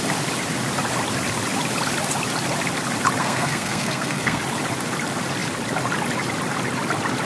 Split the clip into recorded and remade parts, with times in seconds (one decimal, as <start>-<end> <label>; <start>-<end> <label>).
0.0-3.2 recorded; 3.2-4.4 remade; 4.4-7.3 recorded